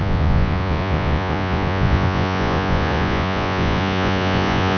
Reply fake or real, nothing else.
fake